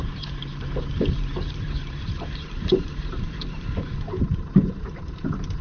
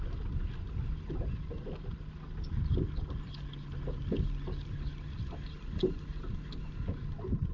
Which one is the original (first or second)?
second